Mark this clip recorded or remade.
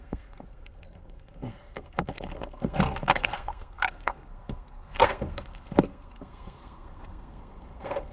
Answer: remade